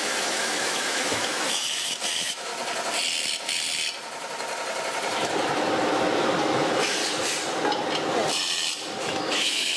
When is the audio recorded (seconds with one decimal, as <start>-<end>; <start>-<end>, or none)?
2.5-6.4; 7.0-9.0